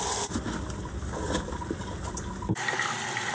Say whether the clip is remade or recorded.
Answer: recorded